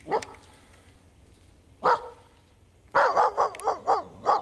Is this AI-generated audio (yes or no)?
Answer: no